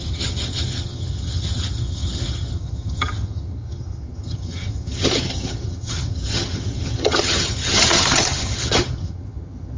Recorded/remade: remade